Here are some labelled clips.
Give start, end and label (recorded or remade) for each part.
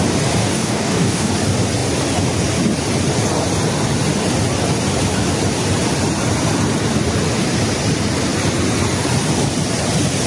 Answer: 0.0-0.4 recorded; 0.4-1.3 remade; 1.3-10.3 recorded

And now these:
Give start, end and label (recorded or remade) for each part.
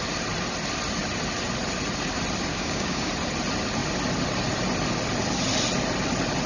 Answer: 0.0-2.5 recorded; 2.5-3.1 remade; 3.1-6.5 recorded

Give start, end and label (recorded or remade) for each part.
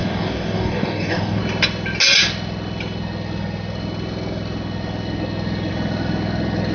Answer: 0.0-1.4 remade; 1.4-6.7 recorded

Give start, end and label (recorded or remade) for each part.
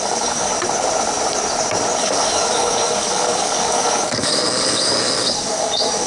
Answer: 0.0-0.5 remade; 0.5-2.0 recorded; 2.0-6.1 remade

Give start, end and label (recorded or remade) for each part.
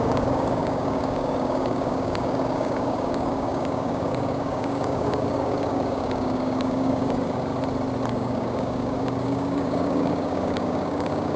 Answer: 0.0-7.5 remade; 7.5-8.1 recorded; 8.1-11.4 remade